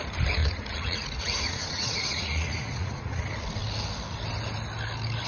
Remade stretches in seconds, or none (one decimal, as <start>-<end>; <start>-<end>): 0.4-3.3